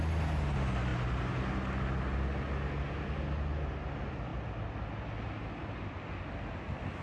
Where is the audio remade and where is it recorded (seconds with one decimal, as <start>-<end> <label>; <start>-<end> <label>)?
0.0-7.0 recorded